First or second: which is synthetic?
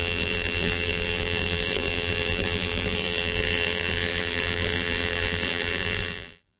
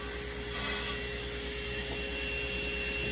first